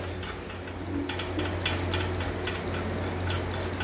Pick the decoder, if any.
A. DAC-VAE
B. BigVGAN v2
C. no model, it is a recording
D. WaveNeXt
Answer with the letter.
C